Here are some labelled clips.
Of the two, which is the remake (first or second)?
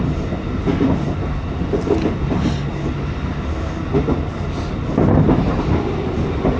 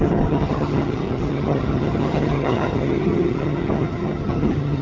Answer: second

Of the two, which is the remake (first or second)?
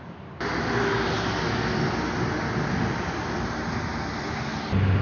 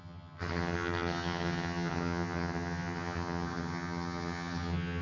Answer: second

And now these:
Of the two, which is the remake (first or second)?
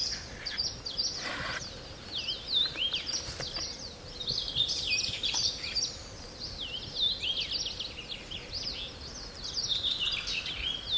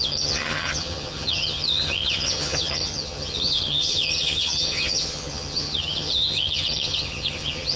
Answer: second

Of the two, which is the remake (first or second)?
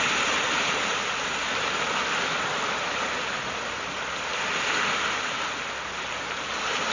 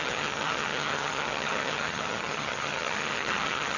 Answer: second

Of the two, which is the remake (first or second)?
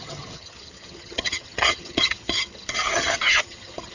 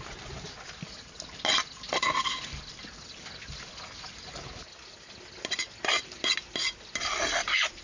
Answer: first